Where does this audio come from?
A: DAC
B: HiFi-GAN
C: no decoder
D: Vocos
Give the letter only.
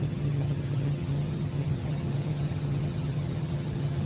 B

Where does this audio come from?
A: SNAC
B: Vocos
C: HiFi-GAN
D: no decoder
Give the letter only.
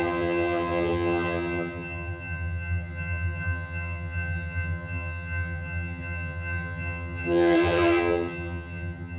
C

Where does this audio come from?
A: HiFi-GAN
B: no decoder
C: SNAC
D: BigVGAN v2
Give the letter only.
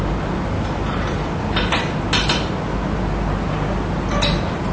B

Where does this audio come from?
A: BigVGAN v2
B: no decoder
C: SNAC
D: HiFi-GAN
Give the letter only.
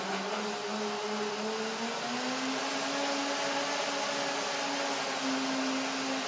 B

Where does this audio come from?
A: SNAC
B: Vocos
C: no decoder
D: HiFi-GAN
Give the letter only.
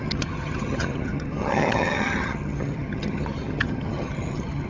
D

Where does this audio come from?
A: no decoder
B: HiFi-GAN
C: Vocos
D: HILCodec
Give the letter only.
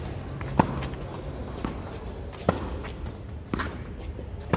A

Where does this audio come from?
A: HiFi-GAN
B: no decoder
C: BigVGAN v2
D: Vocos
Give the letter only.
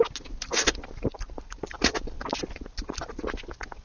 B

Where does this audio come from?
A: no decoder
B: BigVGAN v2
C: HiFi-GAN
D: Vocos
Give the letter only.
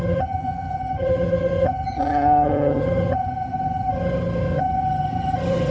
C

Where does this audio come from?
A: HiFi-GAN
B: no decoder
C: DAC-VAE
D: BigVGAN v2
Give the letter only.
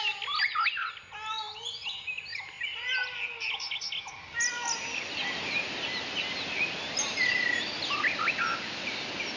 B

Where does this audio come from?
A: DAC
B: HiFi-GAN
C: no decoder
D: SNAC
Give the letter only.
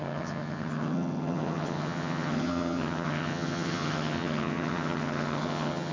B